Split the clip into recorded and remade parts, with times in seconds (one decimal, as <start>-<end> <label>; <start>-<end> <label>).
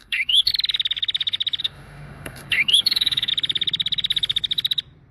0.0-0.5 remade; 0.5-1.6 recorded; 1.6-3.3 remade; 3.3-5.1 recorded